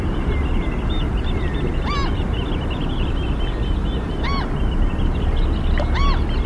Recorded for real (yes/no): yes